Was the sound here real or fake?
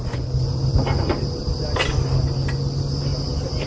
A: real